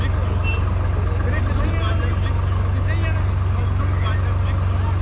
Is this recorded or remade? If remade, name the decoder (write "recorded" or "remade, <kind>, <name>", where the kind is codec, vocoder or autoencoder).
recorded